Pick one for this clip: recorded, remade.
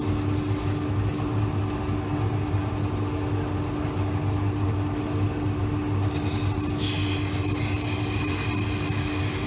recorded